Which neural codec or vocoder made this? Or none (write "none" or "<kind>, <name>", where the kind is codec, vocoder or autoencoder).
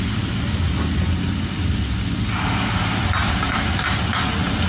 none